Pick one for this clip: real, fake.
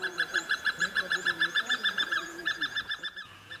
fake